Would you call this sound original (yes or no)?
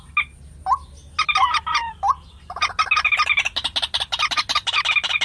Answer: yes